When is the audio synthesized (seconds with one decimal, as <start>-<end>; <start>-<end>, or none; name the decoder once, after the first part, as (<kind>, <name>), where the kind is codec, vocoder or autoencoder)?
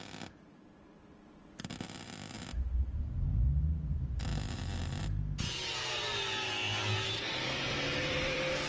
8.0-8.7 (vocoder, BigVGAN v2)